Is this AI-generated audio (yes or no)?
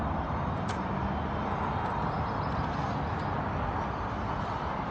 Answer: no